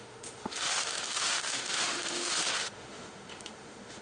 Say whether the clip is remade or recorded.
remade